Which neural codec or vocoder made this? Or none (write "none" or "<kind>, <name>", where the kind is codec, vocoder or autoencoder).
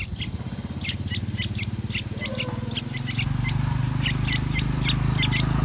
none